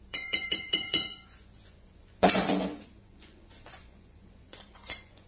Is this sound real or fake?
fake